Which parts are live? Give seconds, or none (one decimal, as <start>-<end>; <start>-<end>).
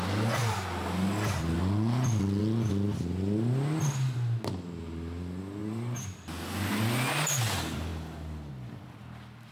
0.0-9.5